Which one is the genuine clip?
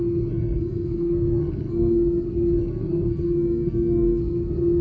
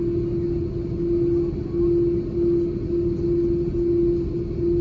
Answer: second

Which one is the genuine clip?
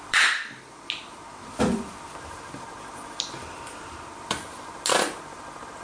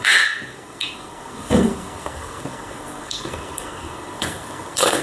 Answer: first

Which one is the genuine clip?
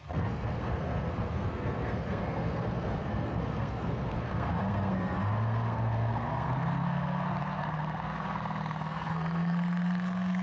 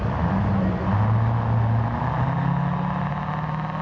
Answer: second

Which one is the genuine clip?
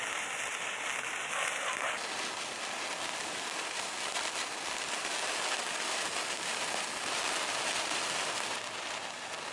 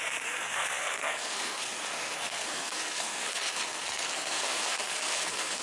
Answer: first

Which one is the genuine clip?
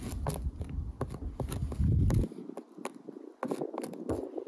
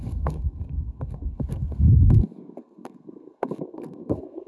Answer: first